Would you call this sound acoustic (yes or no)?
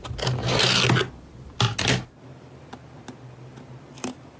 yes